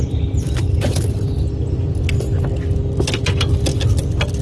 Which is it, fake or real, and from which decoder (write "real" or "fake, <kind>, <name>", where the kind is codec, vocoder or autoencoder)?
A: real